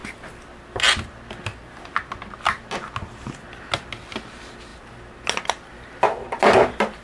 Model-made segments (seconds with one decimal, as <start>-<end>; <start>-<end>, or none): none

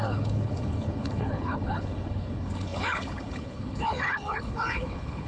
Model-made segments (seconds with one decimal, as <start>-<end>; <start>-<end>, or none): 0.0-5.3

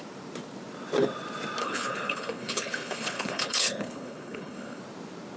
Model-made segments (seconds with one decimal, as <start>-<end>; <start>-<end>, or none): 1.6-4.8

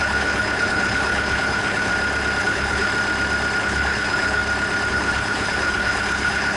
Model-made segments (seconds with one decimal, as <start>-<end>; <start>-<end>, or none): 0.0-1.9; 2.4-2.9; 3.6-4.4; 4.9-6.6

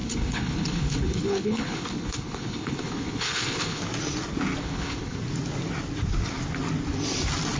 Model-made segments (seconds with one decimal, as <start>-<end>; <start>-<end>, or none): 0.0-3.8; 4.6-5.2

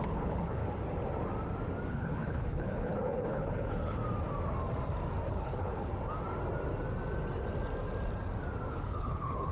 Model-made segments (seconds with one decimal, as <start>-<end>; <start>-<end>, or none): 0.0-0.6; 1.9-4.0; 5.3-5.9; 8.7-9.5

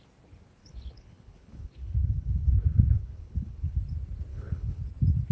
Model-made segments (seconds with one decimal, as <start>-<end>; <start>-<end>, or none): 0.6-3.8; 4.3-4.8

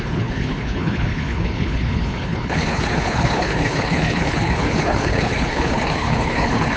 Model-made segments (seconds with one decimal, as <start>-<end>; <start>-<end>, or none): 0.0-6.8